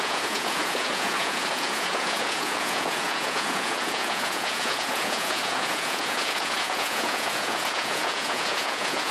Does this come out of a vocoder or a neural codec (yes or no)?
yes